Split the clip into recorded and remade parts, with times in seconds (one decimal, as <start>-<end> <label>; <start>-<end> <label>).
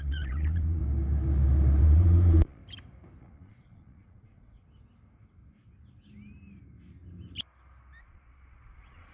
0.0-0.8 remade; 0.8-1.8 recorded; 1.8-2.6 remade; 2.6-3.2 recorded; 3.2-4.6 remade; 4.6-8.0 recorded; 8.0-9.1 remade